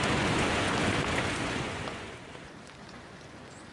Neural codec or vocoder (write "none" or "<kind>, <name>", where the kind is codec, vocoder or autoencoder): vocoder, Vocos